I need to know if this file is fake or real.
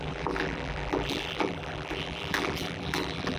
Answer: fake